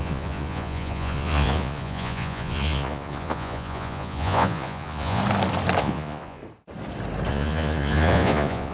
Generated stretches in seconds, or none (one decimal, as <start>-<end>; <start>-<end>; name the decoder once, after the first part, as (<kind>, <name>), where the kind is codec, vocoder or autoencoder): 0.0-5.2 (vocoder, Vocos); 5.8-6.4; 7.3-8.7